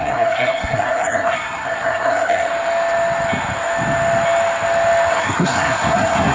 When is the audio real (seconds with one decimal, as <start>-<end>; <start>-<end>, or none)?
2.5-5.1